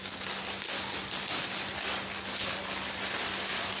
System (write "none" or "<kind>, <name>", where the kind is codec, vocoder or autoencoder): none